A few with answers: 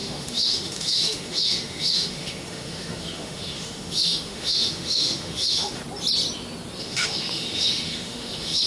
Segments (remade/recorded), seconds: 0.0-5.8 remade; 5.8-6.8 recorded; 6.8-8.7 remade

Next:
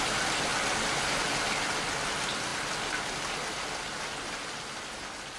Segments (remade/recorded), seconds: 0.0-5.4 recorded

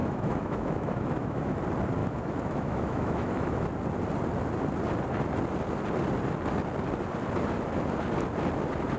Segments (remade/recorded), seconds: 0.0-1.6 remade; 1.6-2.0 recorded; 2.0-3.7 remade; 3.7-9.0 recorded